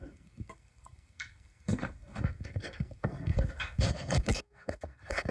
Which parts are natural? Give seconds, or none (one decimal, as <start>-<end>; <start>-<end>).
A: none